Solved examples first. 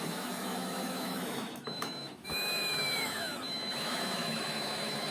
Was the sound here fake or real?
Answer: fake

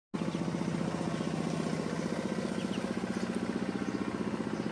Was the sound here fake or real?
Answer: real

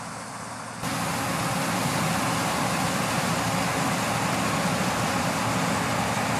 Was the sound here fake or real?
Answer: real